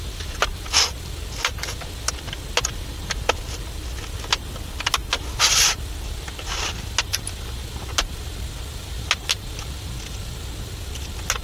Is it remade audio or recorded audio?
recorded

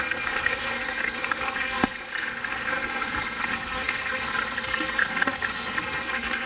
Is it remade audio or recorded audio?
remade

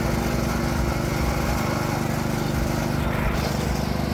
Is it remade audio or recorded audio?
recorded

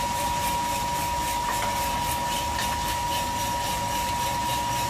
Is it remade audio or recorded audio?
recorded